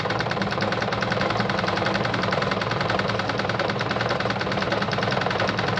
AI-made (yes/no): yes